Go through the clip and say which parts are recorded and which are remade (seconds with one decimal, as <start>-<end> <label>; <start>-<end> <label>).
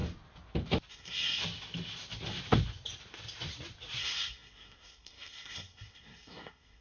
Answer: 0.0-0.9 recorded; 0.9-1.4 remade; 1.4-4.0 recorded; 4.0-6.8 remade